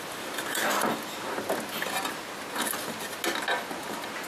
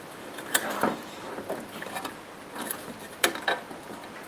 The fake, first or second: second